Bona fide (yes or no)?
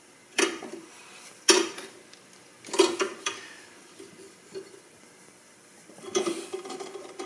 no